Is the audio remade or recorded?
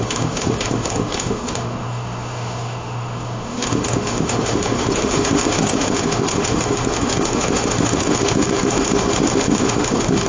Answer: remade